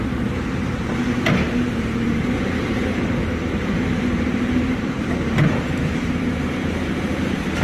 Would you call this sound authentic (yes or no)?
no